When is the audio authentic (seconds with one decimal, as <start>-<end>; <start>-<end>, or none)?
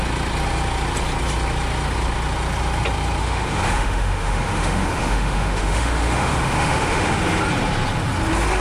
0.0-3.2; 7.2-8.6